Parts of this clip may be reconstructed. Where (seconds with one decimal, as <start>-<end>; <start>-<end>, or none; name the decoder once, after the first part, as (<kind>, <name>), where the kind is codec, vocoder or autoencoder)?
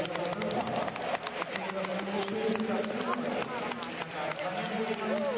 none